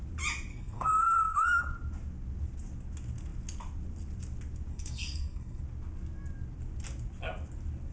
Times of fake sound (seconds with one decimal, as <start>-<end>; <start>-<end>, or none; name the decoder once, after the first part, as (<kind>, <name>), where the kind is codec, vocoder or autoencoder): 0.5-1.6 (codec, SNAC); 4.7-5.6